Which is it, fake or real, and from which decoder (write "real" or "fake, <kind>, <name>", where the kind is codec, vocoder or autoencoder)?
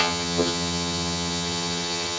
fake, vocoder, HiFi-GAN